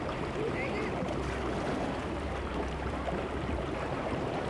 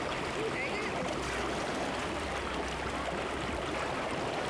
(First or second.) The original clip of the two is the second